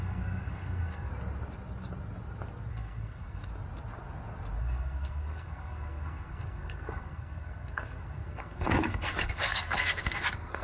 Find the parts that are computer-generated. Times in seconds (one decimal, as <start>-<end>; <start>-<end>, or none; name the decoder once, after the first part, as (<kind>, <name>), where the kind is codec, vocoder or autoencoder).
0.0-1.1 (codec, SNAC); 2.7-3.5; 4.6-10.6